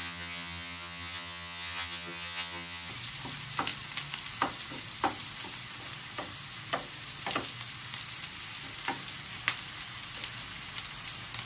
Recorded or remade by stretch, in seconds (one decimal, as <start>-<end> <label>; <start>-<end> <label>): 0.0-2.9 remade; 2.9-11.5 recorded